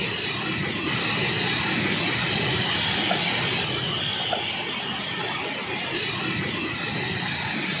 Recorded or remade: recorded